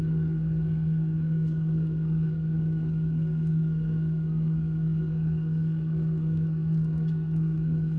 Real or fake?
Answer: fake